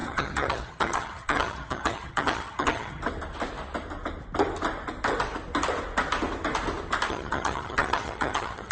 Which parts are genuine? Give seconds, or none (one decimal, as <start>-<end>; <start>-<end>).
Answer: 3.0-7.1